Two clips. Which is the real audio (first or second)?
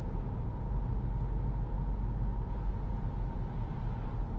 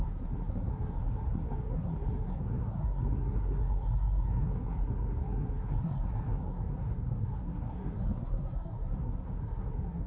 first